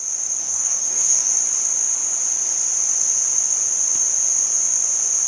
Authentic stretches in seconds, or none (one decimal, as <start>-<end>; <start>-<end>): 0.0-0.4; 1.3-5.3